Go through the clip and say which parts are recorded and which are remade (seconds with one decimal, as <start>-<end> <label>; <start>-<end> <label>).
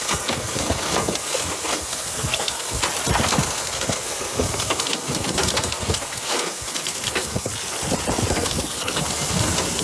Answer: 0.0-2.8 remade; 2.8-3.3 recorded; 3.3-7.5 remade; 7.5-8.3 recorded; 8.3-9.8 remade